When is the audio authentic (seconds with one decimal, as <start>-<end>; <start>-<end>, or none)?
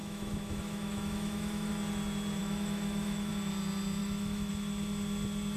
1.7-2.4; 3.3-4.0; 4.5-5.6